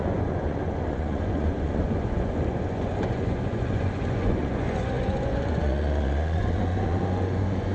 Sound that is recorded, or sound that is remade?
remade